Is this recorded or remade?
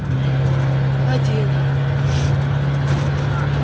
recorded